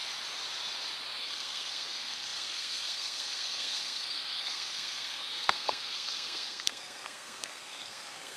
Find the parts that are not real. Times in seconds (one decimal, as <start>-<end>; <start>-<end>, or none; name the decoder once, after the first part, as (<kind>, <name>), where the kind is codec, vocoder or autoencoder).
1.2-8.4 (codec, SNAC)